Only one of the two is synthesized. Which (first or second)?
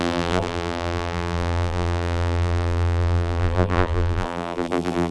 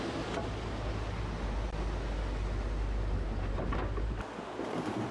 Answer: first